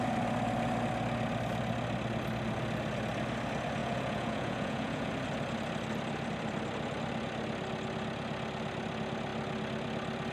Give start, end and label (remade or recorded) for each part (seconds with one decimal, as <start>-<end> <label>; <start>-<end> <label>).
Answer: 0.0-3.8 recorded; 3.8-5.1 remade; 5.1-10.3 recorded